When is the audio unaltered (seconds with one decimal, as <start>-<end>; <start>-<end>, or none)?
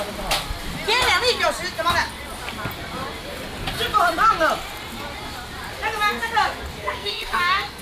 0.0-6.8